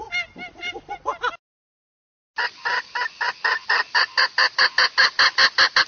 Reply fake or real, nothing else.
real